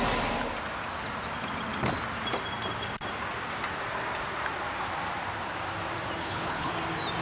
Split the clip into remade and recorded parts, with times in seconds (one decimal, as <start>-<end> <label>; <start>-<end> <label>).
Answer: 0.0-6.2 recorded; 6.2-6.7 remade; 6.7-7.2 recorded